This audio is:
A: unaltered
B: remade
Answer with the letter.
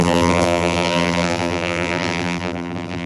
B